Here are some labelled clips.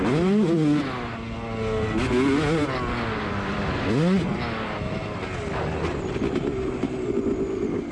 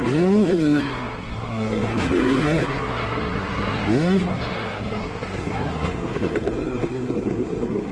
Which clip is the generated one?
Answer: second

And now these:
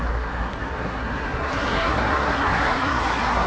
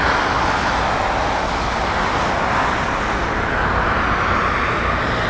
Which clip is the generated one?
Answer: first